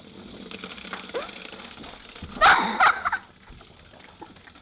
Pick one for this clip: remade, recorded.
recorded